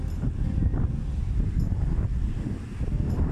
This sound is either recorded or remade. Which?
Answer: recorded